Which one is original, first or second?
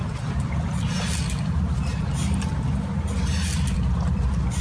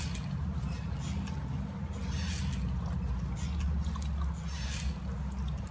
second